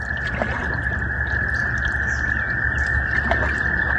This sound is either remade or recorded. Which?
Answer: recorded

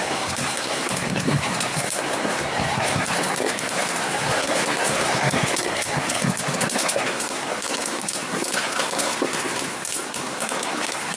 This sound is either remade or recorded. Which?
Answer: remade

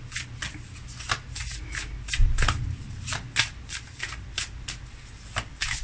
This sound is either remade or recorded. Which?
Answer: recorded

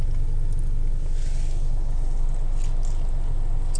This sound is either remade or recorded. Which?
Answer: recorded